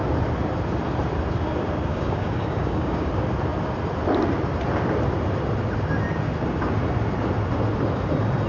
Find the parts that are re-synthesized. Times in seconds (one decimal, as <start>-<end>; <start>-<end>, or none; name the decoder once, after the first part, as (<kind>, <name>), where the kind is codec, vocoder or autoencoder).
1.9-3.1 (codec, DAC)